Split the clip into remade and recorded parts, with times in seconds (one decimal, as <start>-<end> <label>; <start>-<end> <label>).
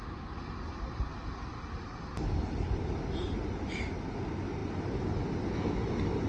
0.0-6.3 recorded